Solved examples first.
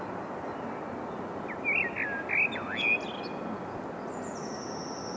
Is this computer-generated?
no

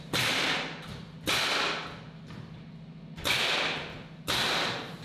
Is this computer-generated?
no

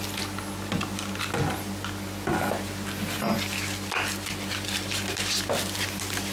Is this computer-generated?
no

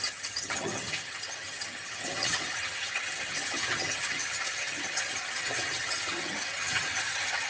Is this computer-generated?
yes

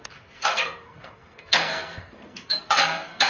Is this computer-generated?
yes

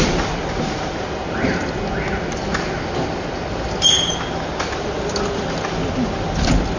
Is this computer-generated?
no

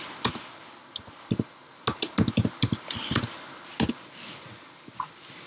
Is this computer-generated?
no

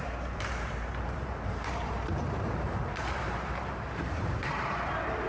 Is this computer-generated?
yes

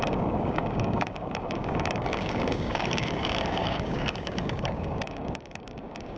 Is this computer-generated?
yes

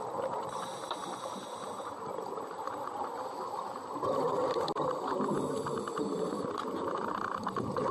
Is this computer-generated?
no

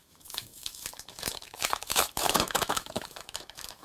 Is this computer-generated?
yes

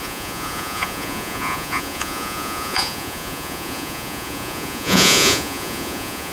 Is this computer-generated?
yes